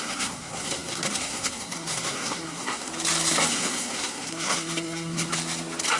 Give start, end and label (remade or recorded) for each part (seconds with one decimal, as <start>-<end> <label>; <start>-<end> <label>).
0.0-2.9 remade; 2.9-3.5 recorded; 3.5-5.3 remade; 5.3-6.0 recorded